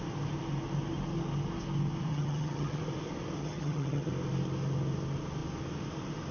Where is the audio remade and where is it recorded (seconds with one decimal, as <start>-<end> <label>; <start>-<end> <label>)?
0.0-2.1 recorded; 2.1-2.8 remade; 2.8-3.4 recorded; 3.4-4.1 remade; 4.1-6.3 recorded

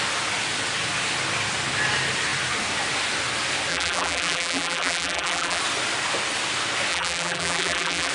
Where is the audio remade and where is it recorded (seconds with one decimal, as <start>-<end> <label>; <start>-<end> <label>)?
0.0-3.7 recorded; 3.7-5.6 remade; 5.6-6.9 recorded; 6.9-8.1 remade